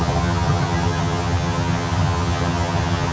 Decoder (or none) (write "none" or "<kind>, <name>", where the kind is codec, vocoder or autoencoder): vocoder, HiFi-GAN